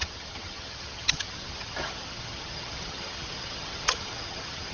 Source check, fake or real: fake